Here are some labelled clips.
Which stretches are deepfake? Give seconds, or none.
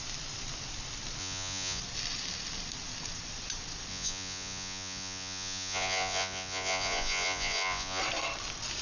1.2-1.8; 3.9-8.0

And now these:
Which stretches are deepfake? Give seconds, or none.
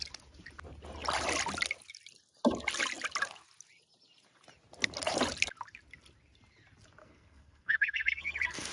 7.0-8.7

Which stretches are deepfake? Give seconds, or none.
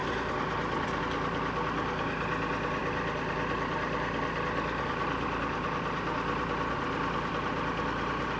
none